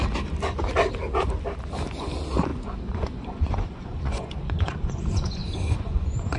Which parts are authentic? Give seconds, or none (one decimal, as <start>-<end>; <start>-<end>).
0.0-2.5